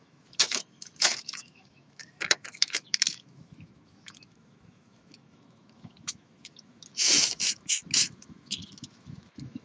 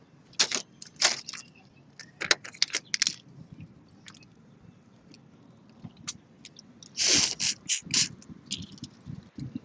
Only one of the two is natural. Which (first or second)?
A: second